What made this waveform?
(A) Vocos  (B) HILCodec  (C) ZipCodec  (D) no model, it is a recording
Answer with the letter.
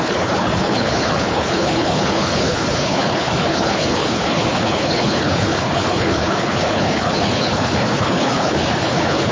B